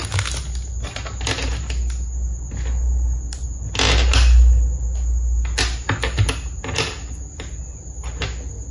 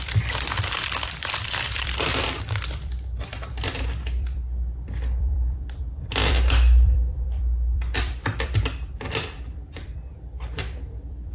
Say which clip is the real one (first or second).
first